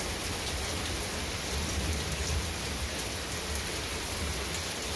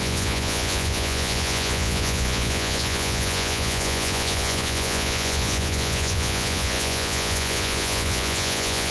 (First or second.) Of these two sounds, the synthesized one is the second